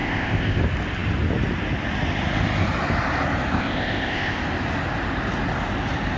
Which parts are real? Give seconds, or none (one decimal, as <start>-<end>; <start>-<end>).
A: 0.6-3.5; 4.4-6.2